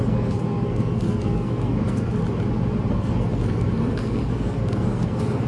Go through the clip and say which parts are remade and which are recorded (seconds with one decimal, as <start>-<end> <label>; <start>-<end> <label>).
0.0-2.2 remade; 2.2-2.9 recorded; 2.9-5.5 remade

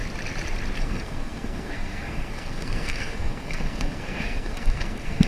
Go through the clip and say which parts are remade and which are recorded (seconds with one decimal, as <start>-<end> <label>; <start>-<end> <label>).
0.0-0.8 recorded; 0.8-5.3 remade

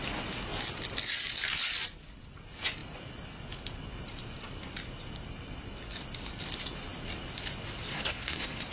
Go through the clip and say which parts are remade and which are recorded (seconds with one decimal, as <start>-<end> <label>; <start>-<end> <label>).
0.0-7.9 recorded; 7.9-8.7 remade